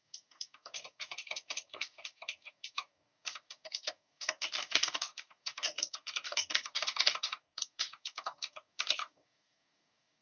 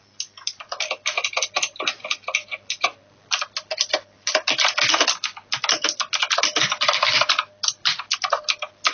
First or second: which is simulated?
first